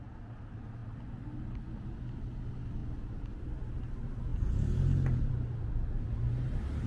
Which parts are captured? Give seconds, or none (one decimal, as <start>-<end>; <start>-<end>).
0.0-6.9